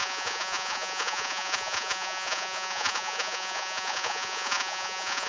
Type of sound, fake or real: fake